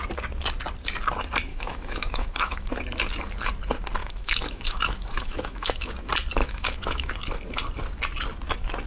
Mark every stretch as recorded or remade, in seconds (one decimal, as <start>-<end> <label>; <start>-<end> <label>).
0.0-1.5 recorded; 1.5-2.7 remade; 2.7-4.0 recorded; 4.0-5.9 remade; 5.9-6.4 recorded; 6.4-7.1 remade; 7.1-8.9 recorded